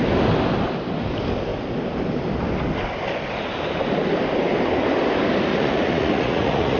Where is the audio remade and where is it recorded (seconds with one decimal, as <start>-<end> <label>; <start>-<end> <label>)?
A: 0.0-5.5 recorded; 5.5-6.8 remade